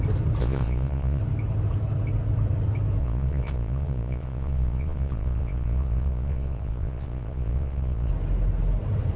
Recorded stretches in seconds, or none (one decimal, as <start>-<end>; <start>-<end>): 0.0-0.4; 1.2-3.0; 8.1-9.2